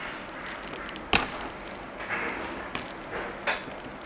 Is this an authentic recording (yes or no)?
yes